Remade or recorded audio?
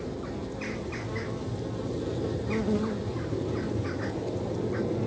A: recorded